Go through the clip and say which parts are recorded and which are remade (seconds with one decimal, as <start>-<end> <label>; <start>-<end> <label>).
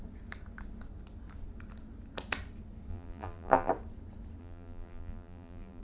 0.0-2.9 recorded; 2.9-3.7 remade; 3.7-4.4 recorded; 4.4-5.8 remade